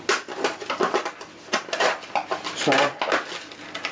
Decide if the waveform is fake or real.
real